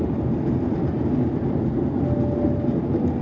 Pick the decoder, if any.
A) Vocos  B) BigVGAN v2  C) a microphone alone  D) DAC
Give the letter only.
C